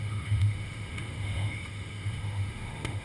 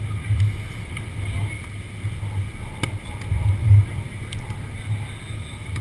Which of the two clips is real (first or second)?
second